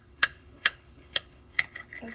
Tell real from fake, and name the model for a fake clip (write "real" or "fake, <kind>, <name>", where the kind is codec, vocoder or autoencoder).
fake, codec, HILCodec